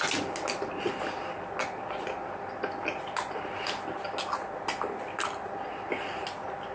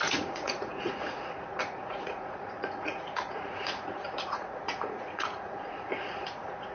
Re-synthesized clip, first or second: second